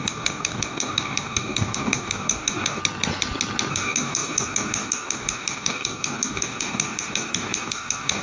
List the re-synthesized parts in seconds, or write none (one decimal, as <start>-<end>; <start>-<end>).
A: 0.0-2.8; 3.7-8.2